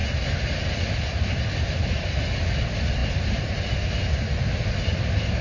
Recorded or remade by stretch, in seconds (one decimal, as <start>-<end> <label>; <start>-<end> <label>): 0.0-5.4 recorded